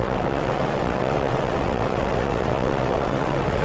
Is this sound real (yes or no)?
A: no